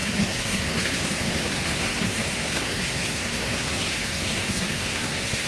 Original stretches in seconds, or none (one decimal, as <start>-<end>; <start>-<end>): none